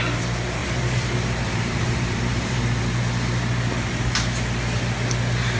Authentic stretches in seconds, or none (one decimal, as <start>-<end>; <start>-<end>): 0.0-0.6; 2.8-5.6